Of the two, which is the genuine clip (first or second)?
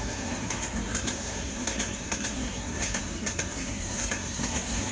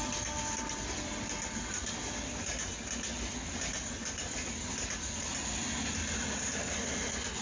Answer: second